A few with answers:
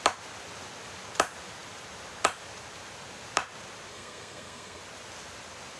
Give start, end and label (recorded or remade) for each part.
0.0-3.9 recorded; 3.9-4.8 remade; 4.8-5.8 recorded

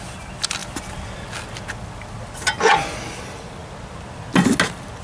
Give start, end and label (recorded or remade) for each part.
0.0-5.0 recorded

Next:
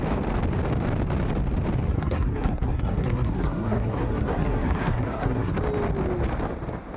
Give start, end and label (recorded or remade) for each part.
0.0-1.9 recorded; 1.9-5.6 remade; 5.6-7.0 recorded

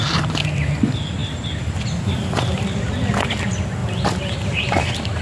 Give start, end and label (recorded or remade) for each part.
0.0-5.2 recorded